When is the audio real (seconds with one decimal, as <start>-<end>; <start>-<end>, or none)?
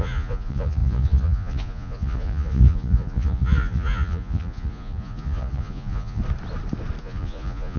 6.2-7.0